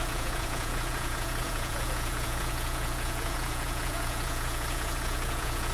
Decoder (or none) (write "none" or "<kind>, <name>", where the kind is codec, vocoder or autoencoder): vocoder, Vocos